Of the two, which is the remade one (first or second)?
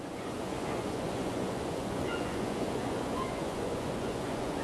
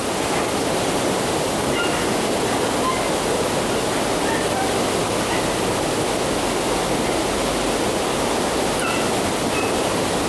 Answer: first